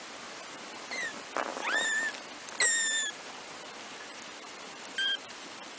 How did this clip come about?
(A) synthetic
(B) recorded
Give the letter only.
B